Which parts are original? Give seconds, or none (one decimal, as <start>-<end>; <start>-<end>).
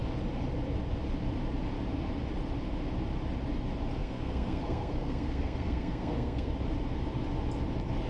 0.0-4.0; 6.5-8.1